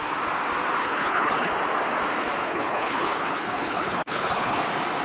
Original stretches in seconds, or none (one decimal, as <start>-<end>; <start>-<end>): 0.0-0.8; 1.5-2.4; 4.6-5.0